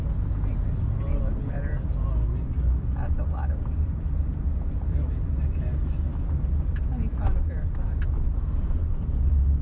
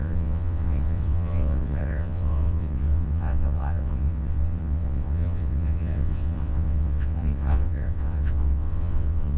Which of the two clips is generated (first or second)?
second